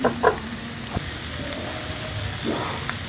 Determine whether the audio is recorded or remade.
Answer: recorded